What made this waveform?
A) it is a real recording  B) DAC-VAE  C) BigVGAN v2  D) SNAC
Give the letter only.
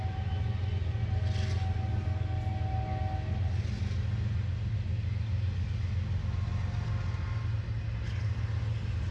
A